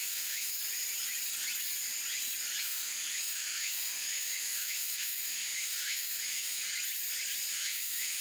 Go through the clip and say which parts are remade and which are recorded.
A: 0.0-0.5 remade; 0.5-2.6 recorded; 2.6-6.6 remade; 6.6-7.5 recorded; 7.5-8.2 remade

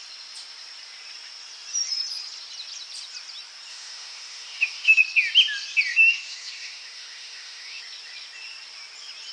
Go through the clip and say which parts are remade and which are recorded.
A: 0.0-3.7 recorded; 3.7-5.0 remade; 5.0-5.9 recorded; 5.9-7.8 remade; 7.8-9.3 recorded

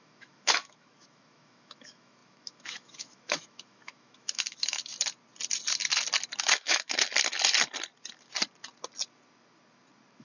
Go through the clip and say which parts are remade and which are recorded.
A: 0.0-4.9 remade; 4.9-6.4 recorded; 6.4-7.1 remade; 7.1-10.2 recorded

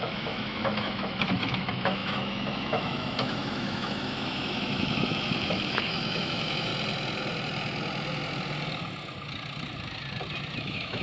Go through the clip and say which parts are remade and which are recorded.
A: 0.0-6.7 remade; 6.7-10.6 recorded; 10.6-11.0 remade

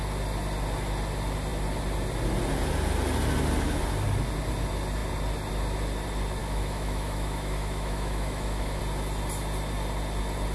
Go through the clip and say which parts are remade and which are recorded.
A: 0.0-6.4 recorded; 6.4-8.8 remade; 8.8-10.5 recorded